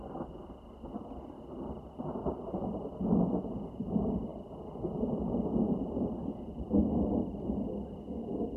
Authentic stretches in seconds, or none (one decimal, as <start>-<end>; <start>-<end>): 0.0-8.6